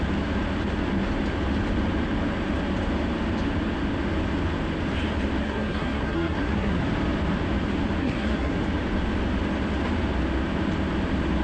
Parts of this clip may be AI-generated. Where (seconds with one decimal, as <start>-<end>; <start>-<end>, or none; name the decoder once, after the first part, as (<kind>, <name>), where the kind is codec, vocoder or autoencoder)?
5.4-6.8 (codec, SNAC); 8.0-8.6